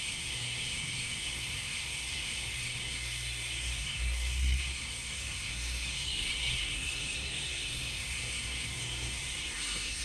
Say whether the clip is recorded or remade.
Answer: remade